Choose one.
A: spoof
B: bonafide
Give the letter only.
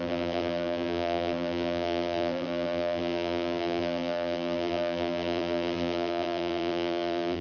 A